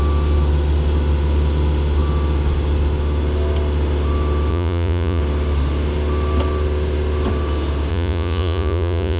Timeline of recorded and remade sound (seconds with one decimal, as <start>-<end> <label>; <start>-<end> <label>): 0.0-4.5 recorded; 4.5-5.2 remade; 5.2-7.9 recorded; 7.9-9.2 remade